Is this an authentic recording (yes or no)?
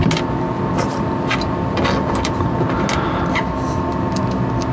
yes